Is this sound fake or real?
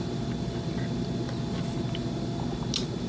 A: real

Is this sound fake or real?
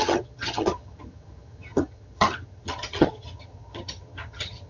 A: fake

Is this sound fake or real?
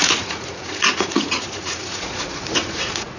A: fake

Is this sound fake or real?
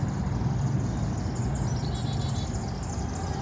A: real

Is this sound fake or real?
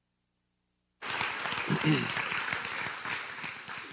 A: real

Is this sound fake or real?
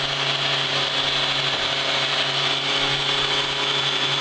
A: real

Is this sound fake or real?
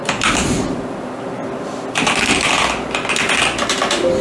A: real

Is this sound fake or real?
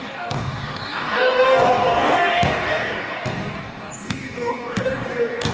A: fake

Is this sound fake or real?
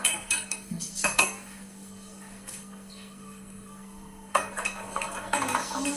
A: fake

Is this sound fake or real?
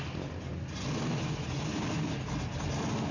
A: real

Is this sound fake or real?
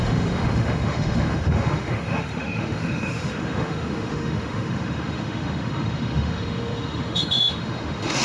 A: fake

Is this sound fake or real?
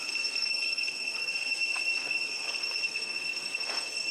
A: fake